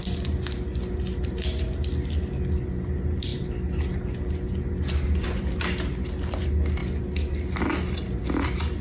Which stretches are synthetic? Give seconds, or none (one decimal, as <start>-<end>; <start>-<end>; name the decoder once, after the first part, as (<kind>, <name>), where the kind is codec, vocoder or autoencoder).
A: none